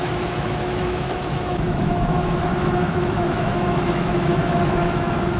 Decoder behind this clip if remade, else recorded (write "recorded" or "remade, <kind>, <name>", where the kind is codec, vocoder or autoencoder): remade, autoencoder, DAC-VAE